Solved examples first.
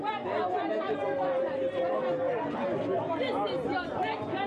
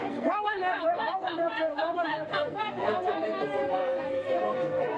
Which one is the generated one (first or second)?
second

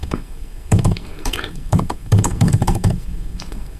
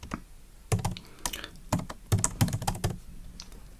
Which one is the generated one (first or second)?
first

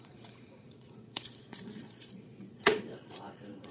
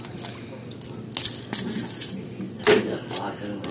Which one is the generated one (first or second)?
first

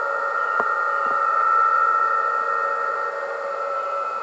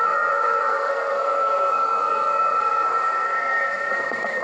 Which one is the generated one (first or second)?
second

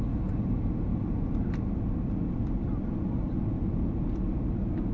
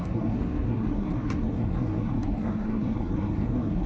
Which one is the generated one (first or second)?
second